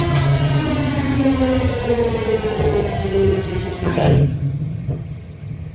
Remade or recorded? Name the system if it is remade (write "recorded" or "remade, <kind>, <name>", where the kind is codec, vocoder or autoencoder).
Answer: remade, vocoder, HiFi-GAN